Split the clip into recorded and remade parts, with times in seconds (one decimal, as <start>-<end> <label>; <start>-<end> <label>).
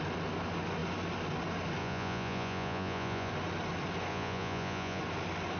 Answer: 0.0-1.8 recorded; 1.8-3.3 remade; 3.3-4.1 recorded; 4.1-5.0 remade; 5.0-5.6 recorded